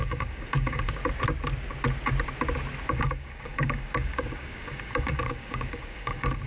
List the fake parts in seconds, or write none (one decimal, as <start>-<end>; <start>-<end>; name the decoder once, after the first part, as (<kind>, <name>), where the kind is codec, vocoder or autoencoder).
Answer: 0.0-1.0 (codec, DAC); 2.9-6.5